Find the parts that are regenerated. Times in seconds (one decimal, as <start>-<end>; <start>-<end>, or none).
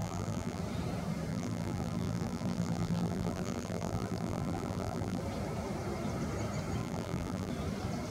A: 0.0-0.6; 1.3-5.2; 6.8-7.5